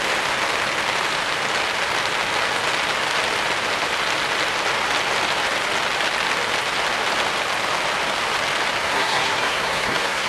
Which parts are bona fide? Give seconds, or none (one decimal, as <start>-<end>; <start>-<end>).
0.0-8.8